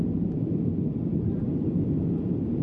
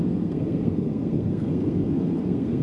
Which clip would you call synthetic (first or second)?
second